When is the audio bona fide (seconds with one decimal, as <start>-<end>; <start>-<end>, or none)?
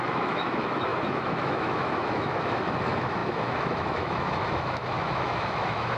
none